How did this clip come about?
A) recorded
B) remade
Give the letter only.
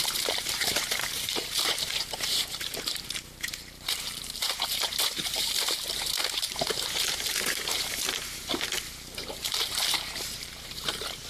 B